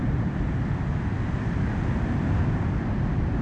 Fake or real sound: real